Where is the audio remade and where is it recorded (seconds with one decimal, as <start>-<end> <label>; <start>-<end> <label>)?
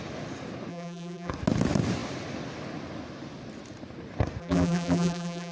0.0-0.7 recorded; 0.7-1.3 remade; 1.3-4.4 recorded; 4.4-5.5 remade